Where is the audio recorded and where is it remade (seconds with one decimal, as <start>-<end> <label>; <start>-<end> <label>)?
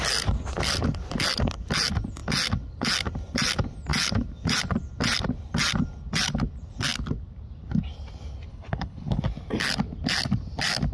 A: 0.0-8.5 recorded; 8.5-9.2 remade; 9.2-10.9 recorded